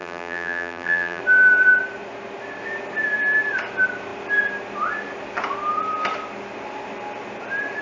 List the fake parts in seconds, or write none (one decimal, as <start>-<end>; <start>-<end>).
0.0-1.2